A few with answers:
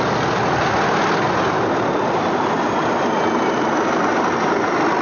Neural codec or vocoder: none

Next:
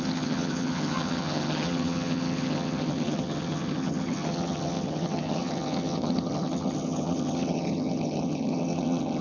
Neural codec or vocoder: vocoder, HiFi-GAN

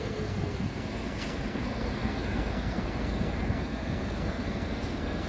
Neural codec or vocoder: codec, SNAC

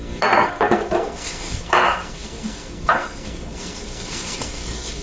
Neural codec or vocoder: codec, SNAC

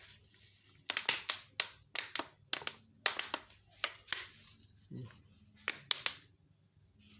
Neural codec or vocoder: none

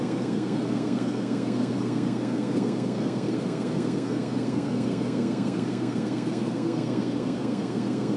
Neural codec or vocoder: codec, SNAC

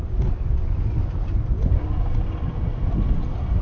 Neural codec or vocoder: none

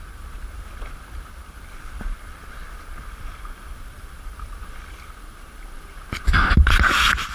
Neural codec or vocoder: vocoder, BigVGAN v2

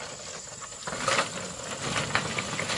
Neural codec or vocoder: none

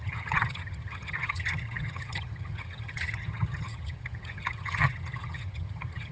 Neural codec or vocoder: vocoder, HiFi-GAN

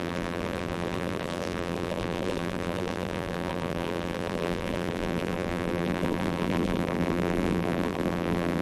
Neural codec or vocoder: vocoder, BigVGAN v2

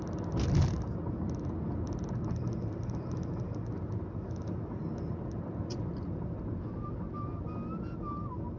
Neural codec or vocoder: none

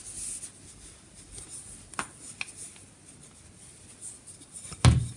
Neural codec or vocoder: none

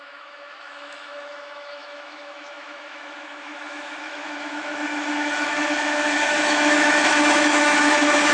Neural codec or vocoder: autoencoder, DAC-VAE